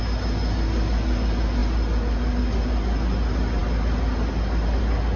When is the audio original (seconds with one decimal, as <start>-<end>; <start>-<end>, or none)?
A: 0.0-5.2